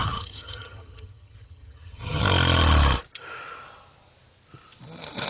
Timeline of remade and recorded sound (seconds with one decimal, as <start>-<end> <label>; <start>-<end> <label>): 0.0-2.2 remade; 2.2-5.3 recorded